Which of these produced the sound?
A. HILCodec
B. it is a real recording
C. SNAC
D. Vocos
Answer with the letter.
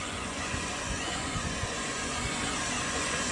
D